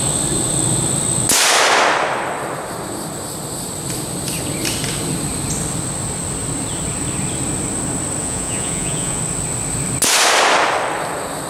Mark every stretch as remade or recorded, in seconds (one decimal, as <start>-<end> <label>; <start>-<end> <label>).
0.0-8.2 recorded; 8.2-9.2 remade; 9.2-11.5 recorded